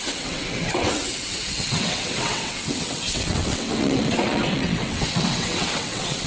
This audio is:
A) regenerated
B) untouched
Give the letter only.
A